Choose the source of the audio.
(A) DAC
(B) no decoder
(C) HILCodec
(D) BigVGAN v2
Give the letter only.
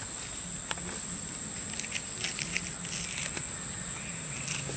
B